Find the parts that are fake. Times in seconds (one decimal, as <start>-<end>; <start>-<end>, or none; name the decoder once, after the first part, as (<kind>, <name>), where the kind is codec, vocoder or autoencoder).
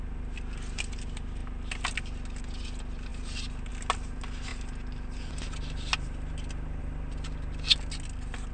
none